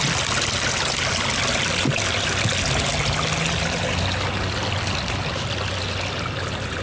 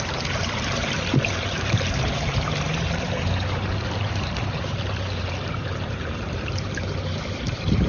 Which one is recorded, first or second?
first